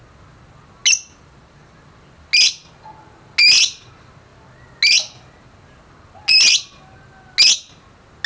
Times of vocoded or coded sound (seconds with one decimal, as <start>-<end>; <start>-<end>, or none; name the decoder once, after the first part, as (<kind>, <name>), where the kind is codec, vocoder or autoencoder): none